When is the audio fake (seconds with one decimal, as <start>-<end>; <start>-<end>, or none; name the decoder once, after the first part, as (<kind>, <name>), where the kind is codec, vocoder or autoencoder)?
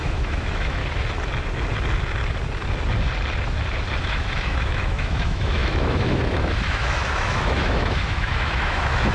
0.0-0.8 (autoencoder, DAC-VAE); 4.0-9.1